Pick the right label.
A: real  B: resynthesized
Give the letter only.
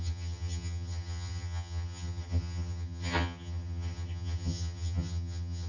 B